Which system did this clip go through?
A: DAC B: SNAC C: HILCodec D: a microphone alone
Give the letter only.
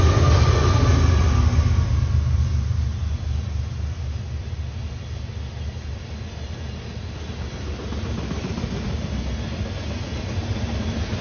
D